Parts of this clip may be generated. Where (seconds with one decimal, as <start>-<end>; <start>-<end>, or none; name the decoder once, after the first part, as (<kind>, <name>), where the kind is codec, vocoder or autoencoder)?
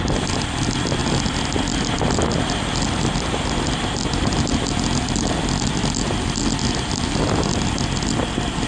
none